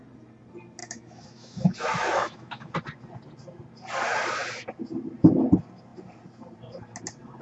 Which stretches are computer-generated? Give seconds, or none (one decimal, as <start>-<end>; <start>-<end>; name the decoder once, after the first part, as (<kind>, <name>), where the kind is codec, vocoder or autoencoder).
0.8-2.7 (autoencoder, DAC-VAE)